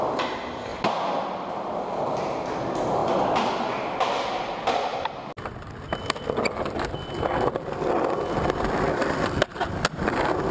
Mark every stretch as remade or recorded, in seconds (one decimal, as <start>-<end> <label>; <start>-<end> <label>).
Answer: 0.0-10.5 recorded